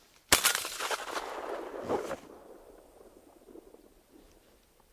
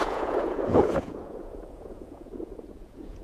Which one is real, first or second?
first